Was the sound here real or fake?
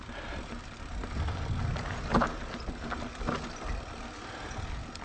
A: real